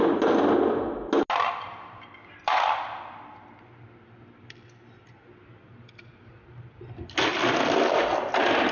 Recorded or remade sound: recorded